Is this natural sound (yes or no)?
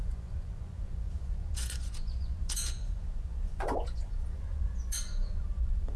no